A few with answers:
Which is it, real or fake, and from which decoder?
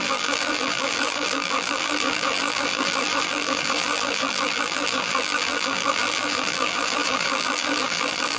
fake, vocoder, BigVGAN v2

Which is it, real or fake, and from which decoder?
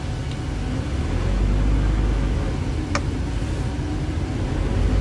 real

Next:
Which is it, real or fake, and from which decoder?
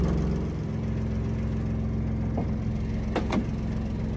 real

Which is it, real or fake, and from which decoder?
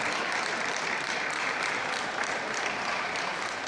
fake, vocoder, BigVGAN v2